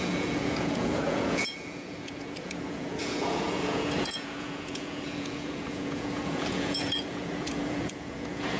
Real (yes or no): no